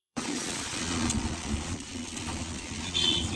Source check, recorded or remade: remade